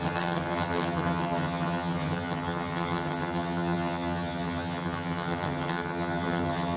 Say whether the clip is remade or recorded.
remade